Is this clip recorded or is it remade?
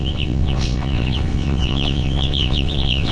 remade